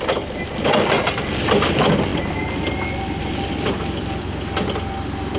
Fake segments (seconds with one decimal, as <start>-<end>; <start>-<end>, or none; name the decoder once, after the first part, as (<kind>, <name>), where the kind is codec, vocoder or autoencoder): none